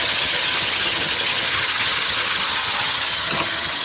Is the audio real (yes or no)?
no